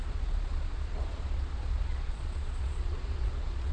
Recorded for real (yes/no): no